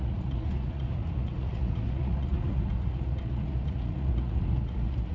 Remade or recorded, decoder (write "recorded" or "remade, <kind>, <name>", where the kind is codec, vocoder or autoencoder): remade, vocoder, Vocos